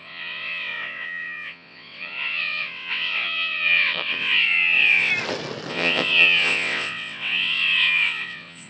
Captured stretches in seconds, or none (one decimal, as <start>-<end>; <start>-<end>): 5.1-5.7